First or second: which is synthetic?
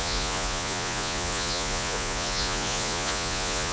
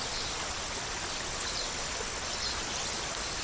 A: first